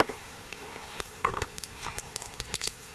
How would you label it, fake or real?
fake